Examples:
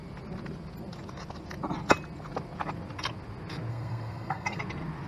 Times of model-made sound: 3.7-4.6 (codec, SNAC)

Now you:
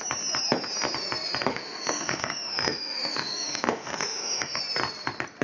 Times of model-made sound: 1.5-4.6 (autoencoder, DAC-VAE)

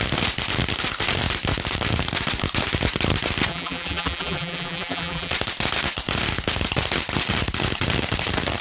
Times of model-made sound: 3.5-5.3 (vocoder, BigVGAN v2)

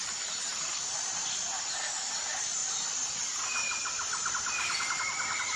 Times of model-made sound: none

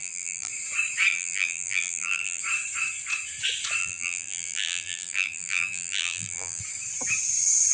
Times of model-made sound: 0.0-0.5 (vocoder, BigVGAN v2); 1.1-2.4; 3.8-6.6

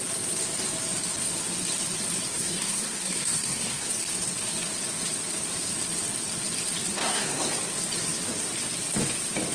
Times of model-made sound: 2.3-3.9 (codec, SNAC); 6.9-7.5

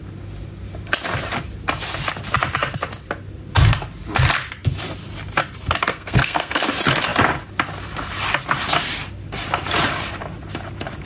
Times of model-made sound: 5.9-6.6 (codec, SNAC)

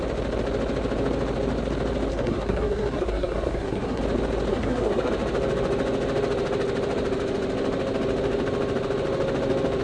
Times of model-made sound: 2.1-4.0 (codec, SNAC); 4.5-5.1